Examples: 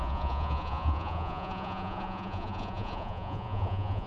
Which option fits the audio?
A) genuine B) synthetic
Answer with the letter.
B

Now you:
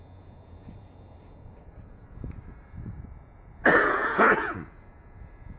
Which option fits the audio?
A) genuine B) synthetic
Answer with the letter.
B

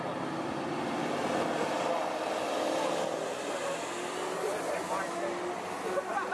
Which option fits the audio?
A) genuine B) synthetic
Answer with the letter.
A